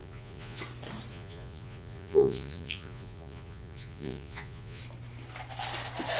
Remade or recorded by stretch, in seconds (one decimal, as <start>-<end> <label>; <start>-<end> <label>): 0.0-0.6 remade; 0.6-1.1 recorded; 1.1-4.8 remade; 4.8-6.2 recorded